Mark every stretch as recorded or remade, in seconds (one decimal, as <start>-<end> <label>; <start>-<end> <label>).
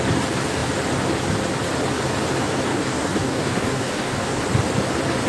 0.0-2.7 recorded; 2.7-4.4 remade; 4.4-5.3 recorded